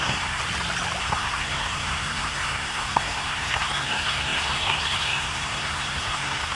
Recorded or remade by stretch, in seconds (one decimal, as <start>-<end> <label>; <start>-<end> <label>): 0.0-0.4 remade; 0.4-1.0 recorded; 1.0-6.5 remade